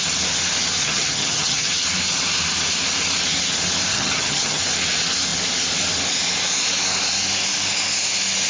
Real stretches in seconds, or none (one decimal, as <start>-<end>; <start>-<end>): 0.0-0.8; 1.7-3.9; 4.6-8.5